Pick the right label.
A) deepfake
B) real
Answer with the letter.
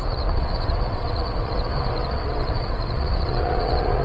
A